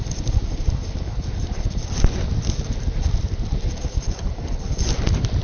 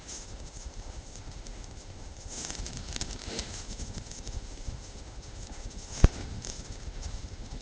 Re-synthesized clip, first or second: second